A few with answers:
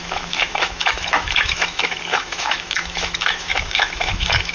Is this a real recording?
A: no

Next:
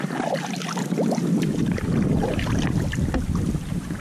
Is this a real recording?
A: yes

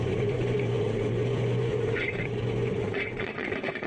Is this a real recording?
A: no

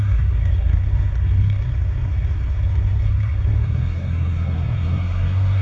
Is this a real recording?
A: no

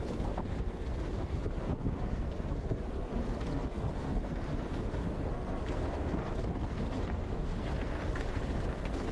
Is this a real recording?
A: no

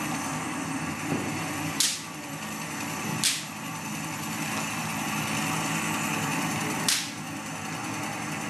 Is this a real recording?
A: yes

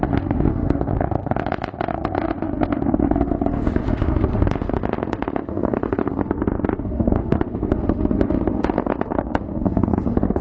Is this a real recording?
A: no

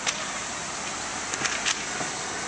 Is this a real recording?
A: yes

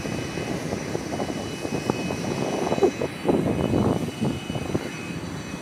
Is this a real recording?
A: yes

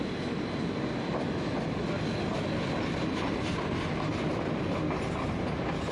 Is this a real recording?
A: yes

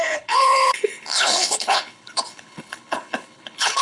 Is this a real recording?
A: no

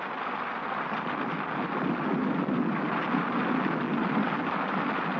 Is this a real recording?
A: yes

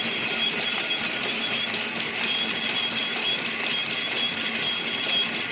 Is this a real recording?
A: yes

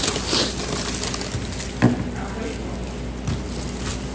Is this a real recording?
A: yes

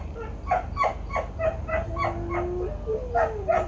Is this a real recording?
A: yes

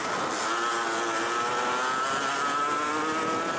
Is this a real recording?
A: yes